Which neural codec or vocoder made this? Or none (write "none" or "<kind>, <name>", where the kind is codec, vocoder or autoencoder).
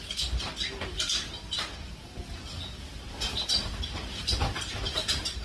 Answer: none